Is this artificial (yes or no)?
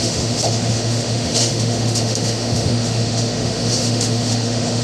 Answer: yes